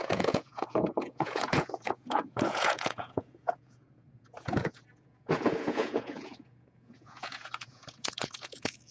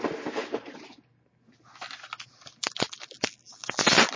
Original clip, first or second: second